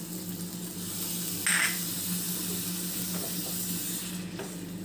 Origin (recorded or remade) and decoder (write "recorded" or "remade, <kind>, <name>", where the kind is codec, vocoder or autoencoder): recorded